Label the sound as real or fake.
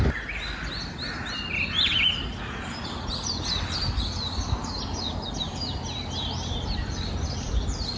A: real